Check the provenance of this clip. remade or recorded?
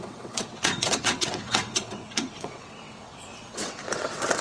remade